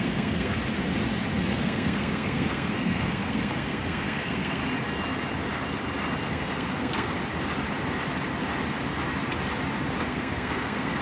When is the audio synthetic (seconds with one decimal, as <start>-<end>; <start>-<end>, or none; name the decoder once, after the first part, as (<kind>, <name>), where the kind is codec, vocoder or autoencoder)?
0.0-0.6 (codec, SNAC); 1.5-4.6; 6.3-7.1; 10.0-11.0